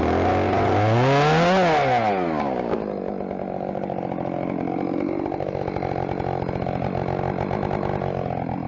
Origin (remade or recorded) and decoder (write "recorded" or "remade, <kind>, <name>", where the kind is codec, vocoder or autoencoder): recorded